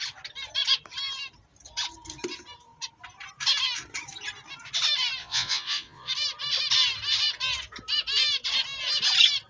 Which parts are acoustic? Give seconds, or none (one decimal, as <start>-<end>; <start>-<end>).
0.0-5.2; 6.1-9.5